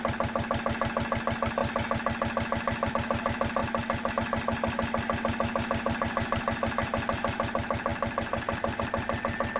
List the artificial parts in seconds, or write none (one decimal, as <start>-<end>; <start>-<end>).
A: none